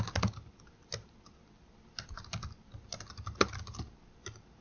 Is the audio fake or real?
real